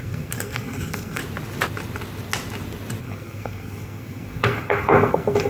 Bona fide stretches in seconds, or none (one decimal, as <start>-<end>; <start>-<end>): 1.2-3.0